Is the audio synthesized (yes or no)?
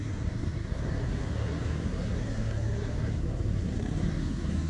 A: yes